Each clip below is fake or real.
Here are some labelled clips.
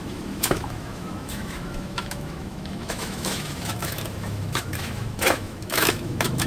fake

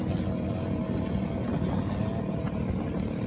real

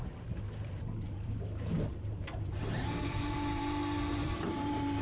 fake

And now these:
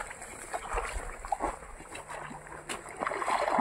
real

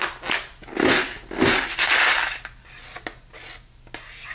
real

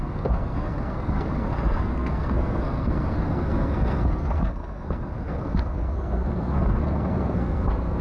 fake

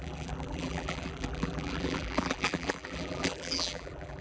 fake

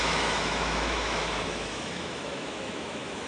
fake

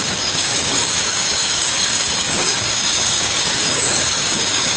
fake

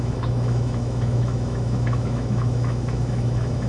fake